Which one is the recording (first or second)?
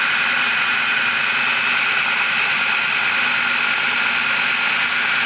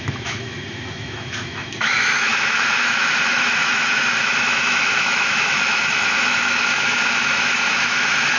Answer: first